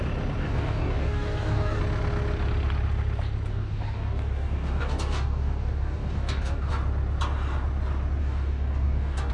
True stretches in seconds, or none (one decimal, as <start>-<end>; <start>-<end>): 0.0-0.4; 1.8-3.5; 6.7-8.2